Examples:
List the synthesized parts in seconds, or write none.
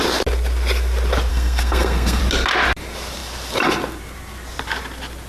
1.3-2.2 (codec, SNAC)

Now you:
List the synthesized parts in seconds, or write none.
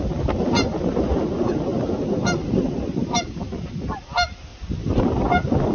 4.5-5.7 (vocoder, BigVGAN v2)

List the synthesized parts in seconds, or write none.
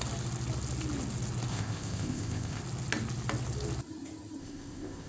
1.5-2.6 (codec, ZipCodec); 4.4-5.1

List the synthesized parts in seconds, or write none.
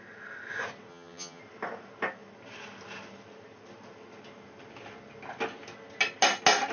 0.9-1.4 (vocoder, HiFi-GAN)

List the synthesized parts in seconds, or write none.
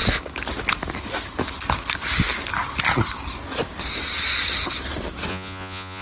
5.3-6.0 (vocoder, Vocos)